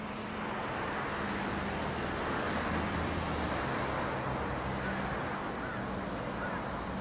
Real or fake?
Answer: real